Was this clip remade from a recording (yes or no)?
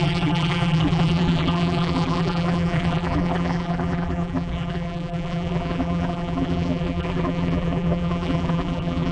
yes